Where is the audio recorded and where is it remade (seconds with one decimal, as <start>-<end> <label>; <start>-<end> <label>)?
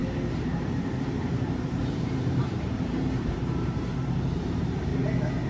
0.0-4.9 remade; 4.9-5.5 recorded